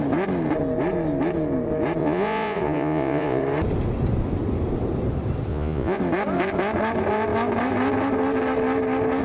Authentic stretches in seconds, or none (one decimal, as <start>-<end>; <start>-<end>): 0.0-2.0; 3.4-5.5; 6.0-9.2